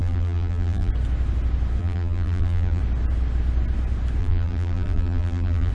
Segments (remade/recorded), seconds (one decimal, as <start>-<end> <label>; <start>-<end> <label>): 0.0-0.9 remade; 0.9-1.8 recorded; 1.8-2.8 remade; 2.8-4.2 recorded; 4.2-5.7 remade